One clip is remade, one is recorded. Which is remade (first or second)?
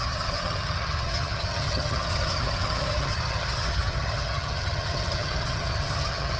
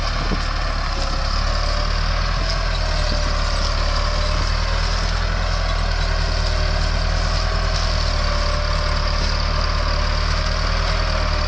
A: first